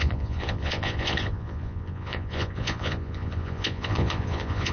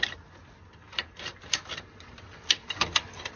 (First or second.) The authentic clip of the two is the second